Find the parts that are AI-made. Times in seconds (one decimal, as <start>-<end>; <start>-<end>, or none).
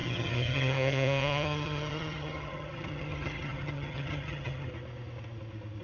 0.0-4.7